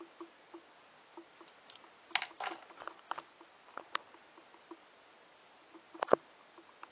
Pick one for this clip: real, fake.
real